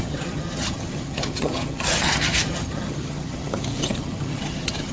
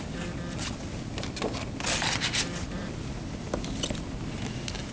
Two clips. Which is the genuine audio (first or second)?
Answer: second